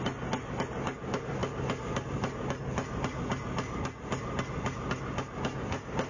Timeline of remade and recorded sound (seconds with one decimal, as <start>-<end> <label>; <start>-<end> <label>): 0.0-6.1 recorded